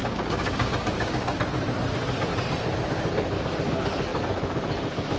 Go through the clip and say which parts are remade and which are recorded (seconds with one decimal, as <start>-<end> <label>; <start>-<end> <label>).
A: 0.0-1.4 remade; 1.4-5.2 recorded